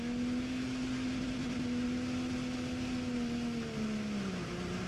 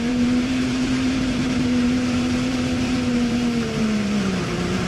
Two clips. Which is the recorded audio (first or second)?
first